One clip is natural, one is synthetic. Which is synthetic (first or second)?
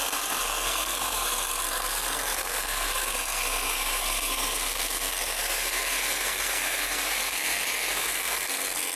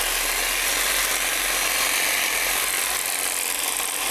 first